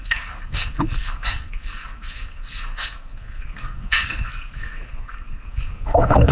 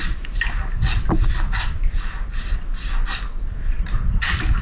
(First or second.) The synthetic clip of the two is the first